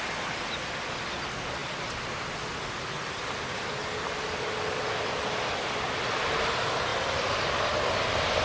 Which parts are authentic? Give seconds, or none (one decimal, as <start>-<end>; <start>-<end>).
0.0-8.4